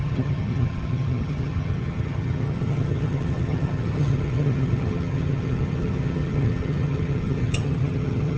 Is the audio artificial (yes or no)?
yes